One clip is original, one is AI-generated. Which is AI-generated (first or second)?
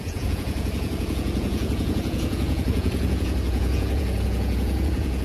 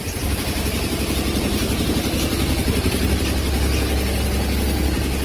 first